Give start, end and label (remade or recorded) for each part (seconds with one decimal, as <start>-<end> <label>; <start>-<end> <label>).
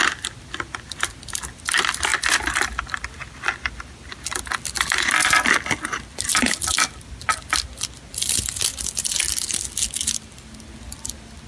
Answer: 0.0-11.5 recorded